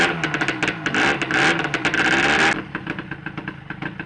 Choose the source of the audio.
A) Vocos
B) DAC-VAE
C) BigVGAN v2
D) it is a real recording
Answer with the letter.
D